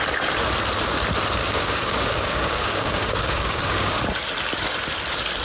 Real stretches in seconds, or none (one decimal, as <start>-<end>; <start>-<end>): 0.0-1.4; 4.0-5.4